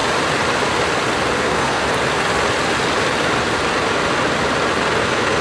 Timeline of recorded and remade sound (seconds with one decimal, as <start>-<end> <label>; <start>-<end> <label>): 0.0-1.4 recorded; 1.4-1.8 remade; 1.8-5.0 recorded; 5.0-5.4 remade